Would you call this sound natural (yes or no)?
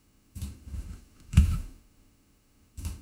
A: no